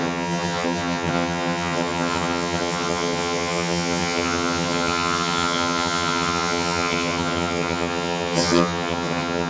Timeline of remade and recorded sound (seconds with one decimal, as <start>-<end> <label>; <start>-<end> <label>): 0.0-9.5 remade

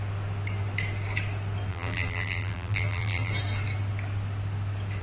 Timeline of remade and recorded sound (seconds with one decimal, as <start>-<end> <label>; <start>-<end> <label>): 0.0-1.7 recorded; 1.7-3.3 remade; 3.3-5.0 recorded

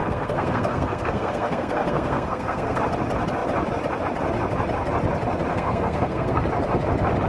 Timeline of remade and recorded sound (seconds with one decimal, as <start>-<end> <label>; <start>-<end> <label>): 0.0-2.8 remade; 2.8-5.5 recorded; 5.5-6.4 remade; 6.4-7.3 recorded

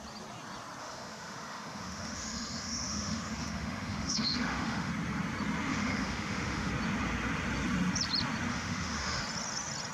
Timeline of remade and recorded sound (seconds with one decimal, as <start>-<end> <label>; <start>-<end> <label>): 0.0-0.8 recorded; 0.8-4.9 remade; 4.9-5.7 recorded; 5.7-6.7 remade; 6.7-8.5 recorded; 8.5-9.2 remade; 9.2-9.9 recorded

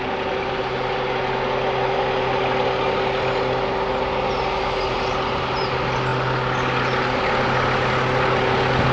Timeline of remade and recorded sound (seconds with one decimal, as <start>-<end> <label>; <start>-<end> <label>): 0.0-8.9 recorded